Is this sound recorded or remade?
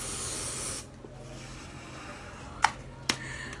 recorded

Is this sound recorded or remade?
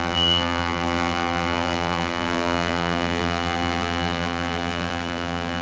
remade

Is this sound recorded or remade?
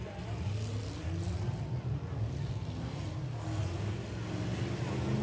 recorded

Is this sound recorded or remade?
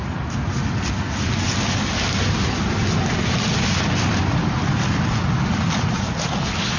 recorded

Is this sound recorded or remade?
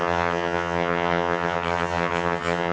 remade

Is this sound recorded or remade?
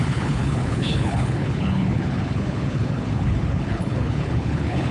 remade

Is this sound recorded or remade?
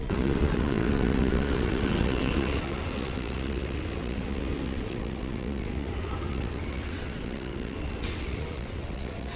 remade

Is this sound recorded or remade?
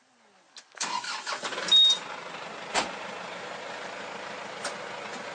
recorded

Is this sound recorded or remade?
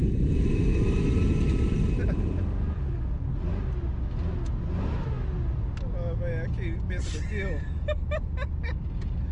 recorded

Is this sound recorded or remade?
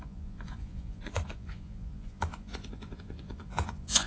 remade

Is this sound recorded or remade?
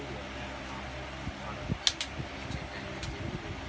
recorded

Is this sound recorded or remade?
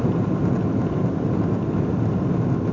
recorded